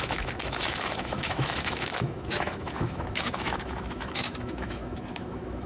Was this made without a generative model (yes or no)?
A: no